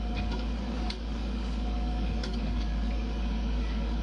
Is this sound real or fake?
fake